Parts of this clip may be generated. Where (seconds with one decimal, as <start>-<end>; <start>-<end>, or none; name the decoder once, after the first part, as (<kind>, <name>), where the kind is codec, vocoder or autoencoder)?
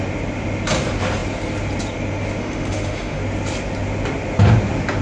2.4-3.2 (autoencoder, DAC-VAE)